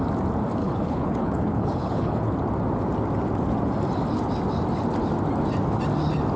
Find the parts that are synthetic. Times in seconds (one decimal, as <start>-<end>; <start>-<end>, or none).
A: 0.6-2.3